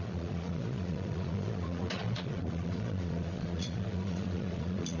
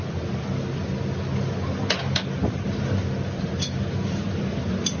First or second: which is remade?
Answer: first